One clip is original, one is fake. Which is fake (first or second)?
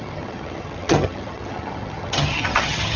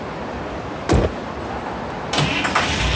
first